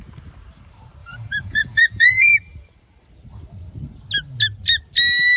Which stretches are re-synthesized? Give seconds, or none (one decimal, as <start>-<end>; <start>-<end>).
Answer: 1.0-2.3